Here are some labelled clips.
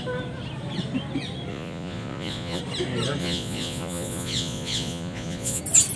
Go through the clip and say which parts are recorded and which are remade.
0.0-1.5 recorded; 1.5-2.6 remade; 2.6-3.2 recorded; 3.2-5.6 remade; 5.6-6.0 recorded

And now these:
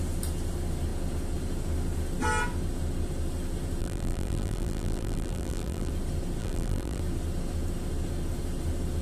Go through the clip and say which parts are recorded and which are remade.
0.0-3.8 recorded; 3.8-5.9 remade; 5.9-6.4 recorded; 6.4-7.0 remade; 7.0-9.0 recorded

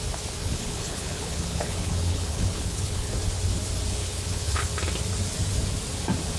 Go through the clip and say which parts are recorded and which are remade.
0.0-0.4 recorded; 0.4-3.1 remade; 3.1-4.0 recorded; 4.0-4.7 remade; 4.7-6.4 recorded